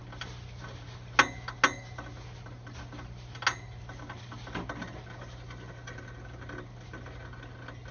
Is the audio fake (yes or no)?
no